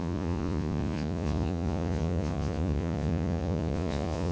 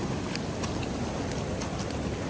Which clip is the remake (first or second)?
first